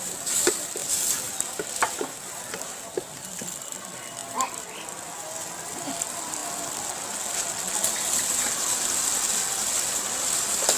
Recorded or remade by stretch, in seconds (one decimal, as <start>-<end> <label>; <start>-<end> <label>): 0.0-6.4 remade; 6.4-9.9 recorded; 9.9-10.8 remade